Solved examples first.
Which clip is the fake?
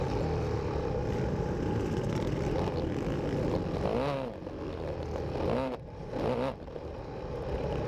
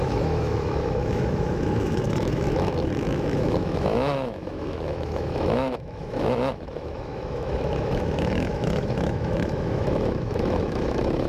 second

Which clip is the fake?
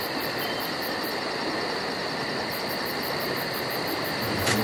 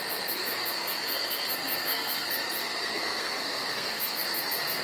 second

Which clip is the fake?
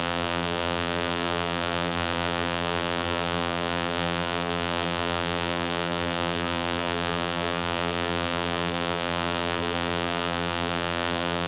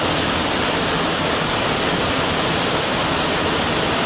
first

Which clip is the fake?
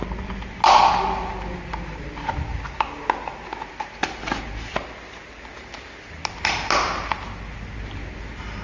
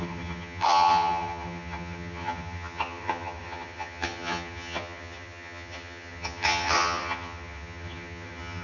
second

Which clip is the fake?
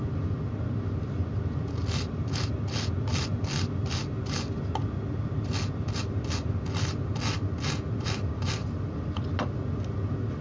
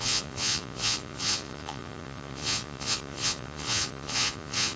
second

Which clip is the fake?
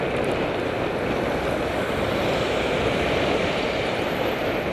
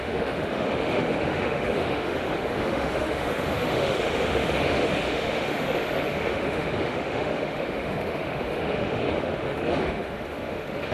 second